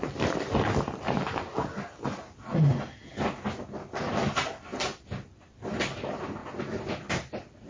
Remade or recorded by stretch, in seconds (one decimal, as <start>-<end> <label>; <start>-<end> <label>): 0.0-4.7 recorded; 4.7-5.8 remade; 5.8-6.4 recorded; 6.4-7.7 remade